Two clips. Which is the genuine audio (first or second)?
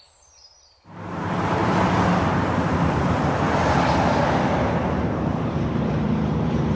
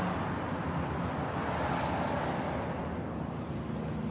second